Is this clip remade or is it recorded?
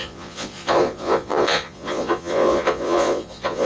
remade